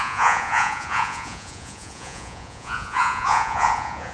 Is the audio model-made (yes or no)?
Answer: yes